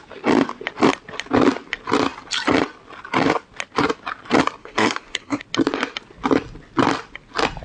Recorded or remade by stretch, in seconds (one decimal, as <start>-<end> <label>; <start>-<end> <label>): 0.0-4.6 recorded; 4.6-5.4 remade; 5.4-7.6 recorded